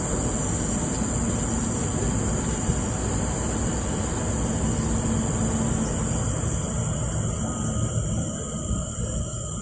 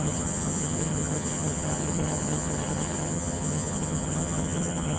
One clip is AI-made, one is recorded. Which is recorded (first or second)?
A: first